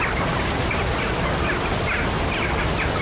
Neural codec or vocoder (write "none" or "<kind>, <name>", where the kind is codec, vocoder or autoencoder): none